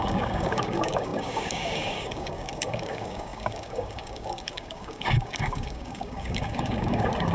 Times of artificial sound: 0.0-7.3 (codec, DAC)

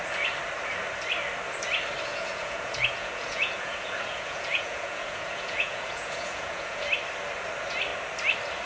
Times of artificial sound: 2.1-6.8 (vocoder, Vocos)

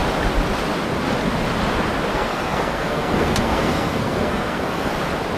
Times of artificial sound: 2.1-4.9 (codec, SNAC)

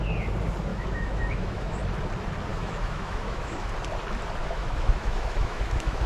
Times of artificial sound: 0.7-1.8 (autoencoder, DAC-VAE); 2.5-3.7; 4.4-6.1

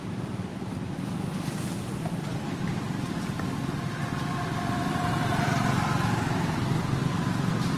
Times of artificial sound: 0.0-0.5 (vocoder, BigVGAN v2); 2.0-2.7; 7.2-7.8

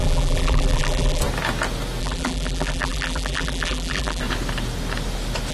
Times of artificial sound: 0.0-1.2 (vocoder, BigVGAN v2); 2.0-4.2

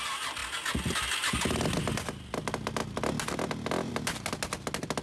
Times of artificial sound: none

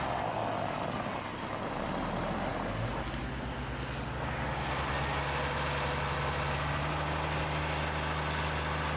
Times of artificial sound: none